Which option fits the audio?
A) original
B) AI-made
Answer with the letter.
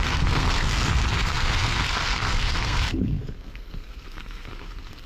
B